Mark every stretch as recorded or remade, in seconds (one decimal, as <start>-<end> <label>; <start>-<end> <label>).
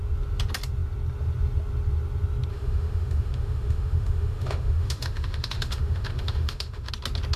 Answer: 0.0-2.5 recorded; 2.5-6.9 remade; 6.9-7.4 recorded